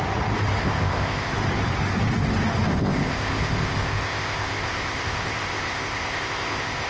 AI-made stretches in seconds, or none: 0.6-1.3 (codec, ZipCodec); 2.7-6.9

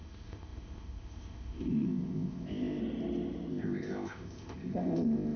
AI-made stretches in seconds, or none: 0.0-2.8 (codec, ZipCodec); 3.5-5.4

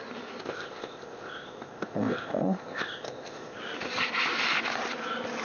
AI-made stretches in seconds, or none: 0.4-3.6 (codec, ZipCodec)

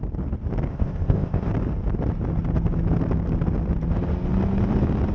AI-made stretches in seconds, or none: 0.7-1.5 (codec, ZipCodec)

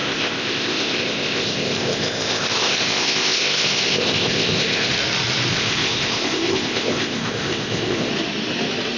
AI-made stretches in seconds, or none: 0.0-4.9 (codec, ZipCodec); 5.5-8.1

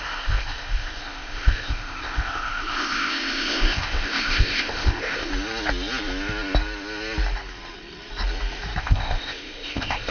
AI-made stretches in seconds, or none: 0.0-5.3 (codec, ZipCodec); 8.8-10.1